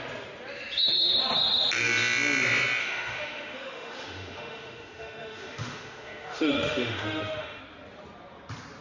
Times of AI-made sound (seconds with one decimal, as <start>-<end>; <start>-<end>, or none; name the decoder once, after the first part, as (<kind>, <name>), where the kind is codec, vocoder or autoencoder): 2.8-7.6 (autoencoder, DAC-VAE)